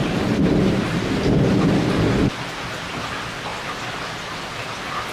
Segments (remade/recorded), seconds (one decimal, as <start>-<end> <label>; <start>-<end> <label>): 0.0-5.1 recorded